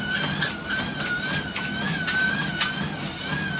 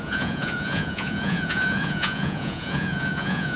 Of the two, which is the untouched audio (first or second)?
first